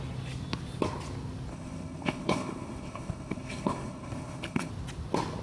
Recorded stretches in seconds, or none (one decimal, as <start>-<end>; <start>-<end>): 0.0-1.5; 4.7-5.4